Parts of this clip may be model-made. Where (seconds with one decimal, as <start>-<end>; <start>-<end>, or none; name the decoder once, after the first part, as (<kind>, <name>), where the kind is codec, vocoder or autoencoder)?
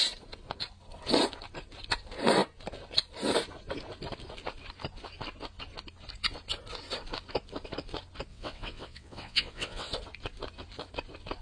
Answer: 8.3-9.9 (vocoder, WaveNeXt)